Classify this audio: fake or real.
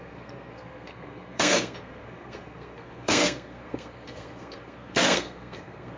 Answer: fake